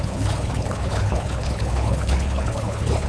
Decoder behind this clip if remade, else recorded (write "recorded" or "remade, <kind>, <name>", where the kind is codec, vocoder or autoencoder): remade, codec, HILCodec